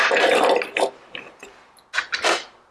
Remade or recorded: recorded